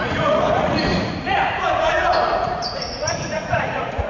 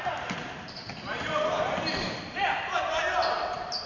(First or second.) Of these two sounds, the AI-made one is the first